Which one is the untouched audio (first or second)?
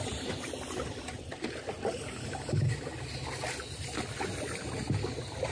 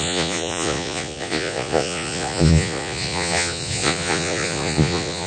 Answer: first